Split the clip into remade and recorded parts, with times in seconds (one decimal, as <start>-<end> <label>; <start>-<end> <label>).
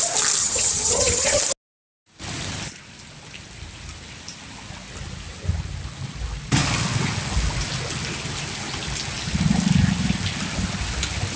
0.0-0.4 recorded; 0.4-1.4 remade; 1.4-11.4 recorded